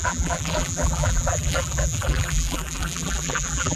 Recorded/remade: remade